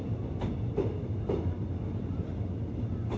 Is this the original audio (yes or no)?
no